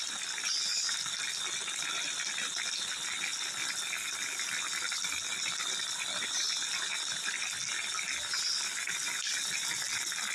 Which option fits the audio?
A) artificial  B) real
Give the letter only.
B